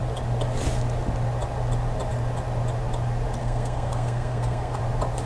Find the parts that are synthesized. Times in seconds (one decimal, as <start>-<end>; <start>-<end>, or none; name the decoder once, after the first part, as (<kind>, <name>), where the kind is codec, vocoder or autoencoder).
3.4-4.8 (codec, SNAC)